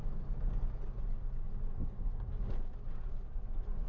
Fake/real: real